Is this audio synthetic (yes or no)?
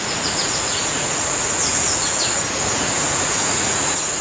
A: yes